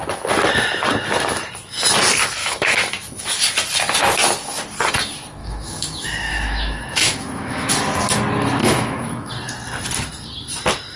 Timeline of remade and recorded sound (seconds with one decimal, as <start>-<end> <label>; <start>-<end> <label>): 0.0-2.4 recorded; 2.4-3.2 remade; 3.2-5.4 recorded; 5.4-7.7 remade; 7.7-8.6 recorded; 8.6-9.3 remade; 9.3-11.0 recorded